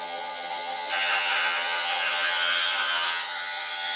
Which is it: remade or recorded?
remade